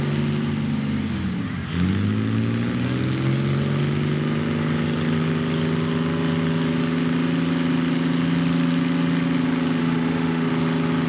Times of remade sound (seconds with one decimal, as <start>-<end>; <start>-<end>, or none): 9.8-10.5